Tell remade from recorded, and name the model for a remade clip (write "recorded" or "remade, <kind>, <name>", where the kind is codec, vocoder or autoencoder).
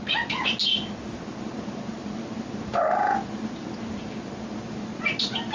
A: recorded